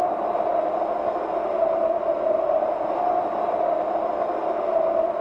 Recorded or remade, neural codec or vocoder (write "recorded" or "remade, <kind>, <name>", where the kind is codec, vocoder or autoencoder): recorded